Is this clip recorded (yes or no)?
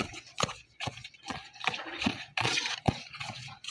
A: no